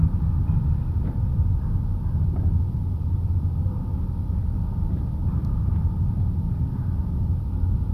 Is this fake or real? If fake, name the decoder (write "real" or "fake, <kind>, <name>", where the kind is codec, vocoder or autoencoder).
real